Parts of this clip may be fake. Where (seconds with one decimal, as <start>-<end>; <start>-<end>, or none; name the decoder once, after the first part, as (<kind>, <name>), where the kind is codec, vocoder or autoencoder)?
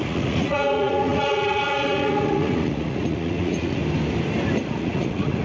0.0-3.8 (vocoder, Vocos); 4.7-5.4